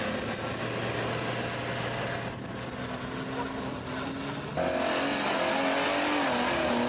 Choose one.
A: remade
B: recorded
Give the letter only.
B